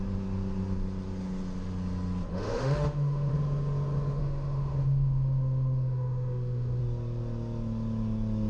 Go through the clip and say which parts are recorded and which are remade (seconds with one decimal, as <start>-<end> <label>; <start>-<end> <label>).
0.0-2.3 recorded; 2.3-3.3 remade; 3.3-4.2 recorded; 4.2-6.8 remade; 6.8-8.5 recorded